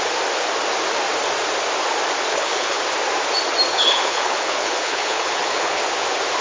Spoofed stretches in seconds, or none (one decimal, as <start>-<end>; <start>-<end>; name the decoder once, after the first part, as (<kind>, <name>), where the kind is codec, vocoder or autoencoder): 2.3-2.8 (codec, HILCodec); 3.7-5.8